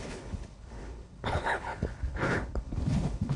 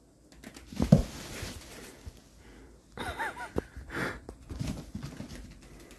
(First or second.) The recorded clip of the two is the second